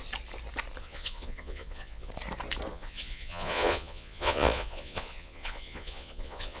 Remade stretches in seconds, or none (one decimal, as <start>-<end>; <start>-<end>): 0.8-2.1; 2.7-6.6